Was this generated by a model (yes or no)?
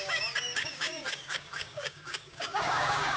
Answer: yes